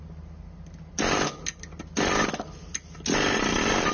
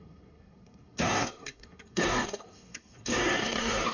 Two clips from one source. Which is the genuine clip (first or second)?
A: first